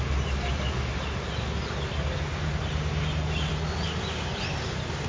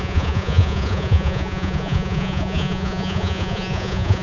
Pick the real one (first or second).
first